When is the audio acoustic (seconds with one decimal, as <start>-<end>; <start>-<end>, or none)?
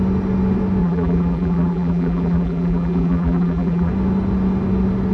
0.0-0.8; 3.9-5.1